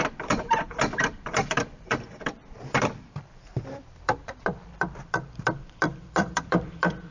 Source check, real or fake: fake